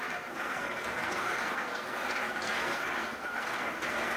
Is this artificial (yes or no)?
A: yes